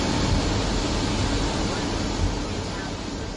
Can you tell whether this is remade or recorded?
recorded